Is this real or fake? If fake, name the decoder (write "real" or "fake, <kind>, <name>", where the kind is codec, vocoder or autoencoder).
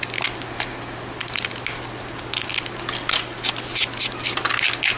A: real